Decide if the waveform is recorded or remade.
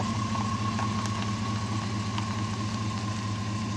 recorded